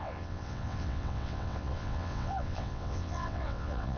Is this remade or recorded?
remade